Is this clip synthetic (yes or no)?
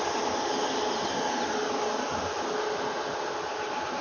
no